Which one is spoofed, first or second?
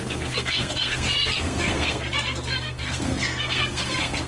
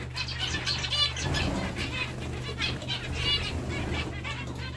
first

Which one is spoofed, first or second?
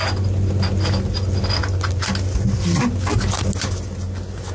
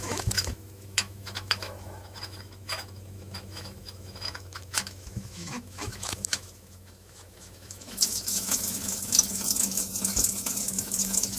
second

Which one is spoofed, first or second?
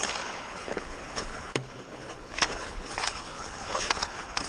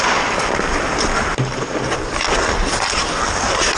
first